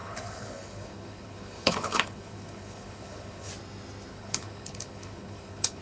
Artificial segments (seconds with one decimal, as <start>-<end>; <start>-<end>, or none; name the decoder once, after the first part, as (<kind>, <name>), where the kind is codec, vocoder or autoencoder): 0.0-3.5 (codec, HILCodec); 4.1-5.8